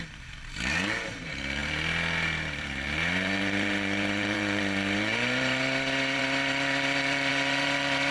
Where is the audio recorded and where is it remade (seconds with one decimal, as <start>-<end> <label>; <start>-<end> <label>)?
0.0-8.1 remade